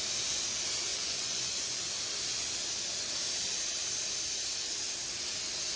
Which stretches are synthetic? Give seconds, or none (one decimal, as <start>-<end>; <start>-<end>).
0.9-1.8